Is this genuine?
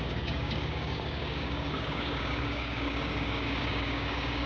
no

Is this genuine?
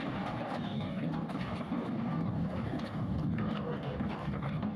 no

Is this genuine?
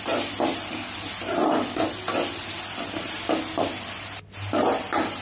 yes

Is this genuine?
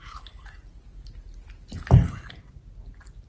yes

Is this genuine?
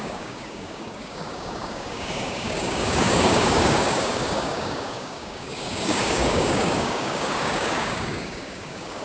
no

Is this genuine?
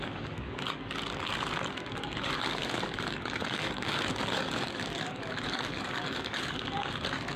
no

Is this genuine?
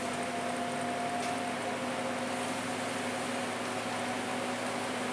yes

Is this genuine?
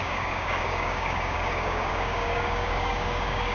no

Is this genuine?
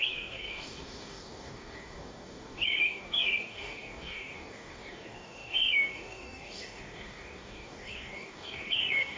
no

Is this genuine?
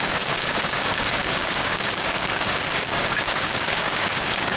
no